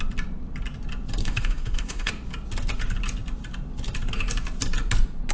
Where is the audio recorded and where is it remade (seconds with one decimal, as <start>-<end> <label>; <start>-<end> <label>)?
0.0-1.2 recorded; 1.2-2.1 remade; 2.1-5.3 recorded

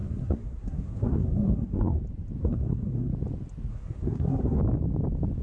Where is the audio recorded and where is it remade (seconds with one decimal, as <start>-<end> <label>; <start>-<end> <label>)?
0.0-2.0 remade; 2.0-2.4 recorded; 2.4-3.1 remade; 3.1-3.7 recorded; 3.7-4.6 remade; 4.6-5.4 recorded

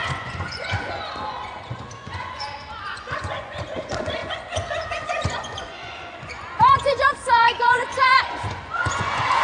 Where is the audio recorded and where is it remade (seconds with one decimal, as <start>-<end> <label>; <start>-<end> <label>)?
0.0-9.4 remade

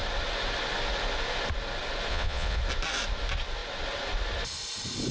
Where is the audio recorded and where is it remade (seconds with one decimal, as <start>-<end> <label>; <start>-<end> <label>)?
0.0-2.1 recorded; 2.1-2.6 remade; 2.6-5.1 recorded

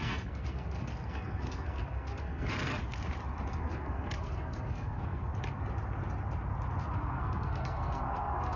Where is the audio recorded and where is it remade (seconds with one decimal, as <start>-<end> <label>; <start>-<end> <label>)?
0.0-2.8 remade; 2.8-3.5 recorded; 3.5-5.3 remade; 5.3-6.9 recorded; 6.9-8.6 remade

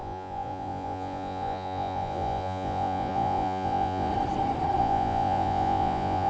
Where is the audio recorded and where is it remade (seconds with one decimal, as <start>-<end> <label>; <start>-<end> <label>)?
0.0-4.1 remade; 4.1-4.8 recorded; 4.8-6.3 remade

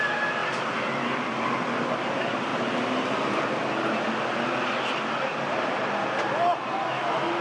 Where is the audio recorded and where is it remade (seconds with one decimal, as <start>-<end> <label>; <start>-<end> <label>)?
0.0-7.4 recorded